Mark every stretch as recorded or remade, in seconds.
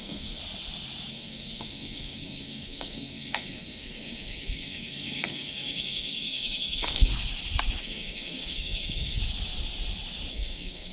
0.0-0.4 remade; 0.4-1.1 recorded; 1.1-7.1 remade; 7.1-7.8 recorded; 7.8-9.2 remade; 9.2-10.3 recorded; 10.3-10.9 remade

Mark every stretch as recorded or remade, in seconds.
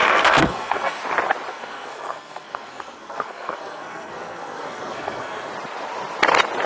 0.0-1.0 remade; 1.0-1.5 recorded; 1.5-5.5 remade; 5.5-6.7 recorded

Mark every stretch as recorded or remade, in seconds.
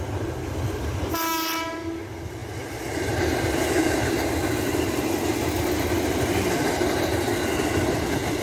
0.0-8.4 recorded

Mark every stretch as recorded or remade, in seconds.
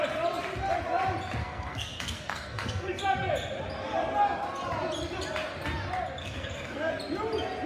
0.0-1.4 recorded; 1.4-3.0 remade; 3.0-6.2 recorded; 6.2-6.9 remade; 6.9-7.7 recorded